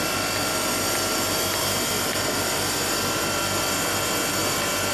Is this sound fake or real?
real